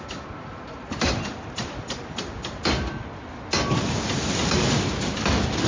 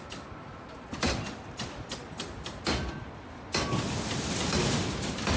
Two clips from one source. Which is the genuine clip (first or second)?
first